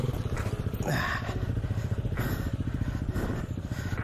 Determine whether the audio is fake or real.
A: real